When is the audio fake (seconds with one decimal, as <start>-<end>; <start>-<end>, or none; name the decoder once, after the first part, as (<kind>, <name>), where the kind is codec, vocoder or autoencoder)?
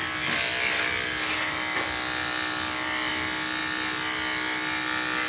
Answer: none